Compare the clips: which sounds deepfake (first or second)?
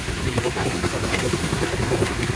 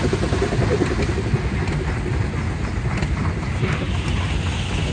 first